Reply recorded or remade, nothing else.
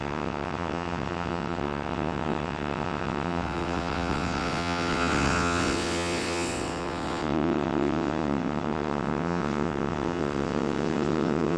remade